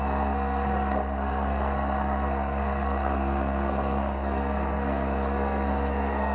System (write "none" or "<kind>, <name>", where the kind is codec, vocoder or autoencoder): codec, SNAC